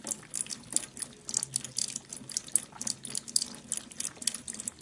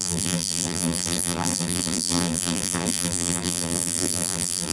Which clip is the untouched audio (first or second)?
first